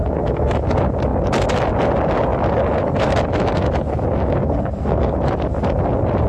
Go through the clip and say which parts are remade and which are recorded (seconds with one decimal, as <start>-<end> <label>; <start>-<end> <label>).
0.0-0.5 remade; 0.5-4.4 recorded; 4.4-5.1 remade; 5.1-6.3 recorded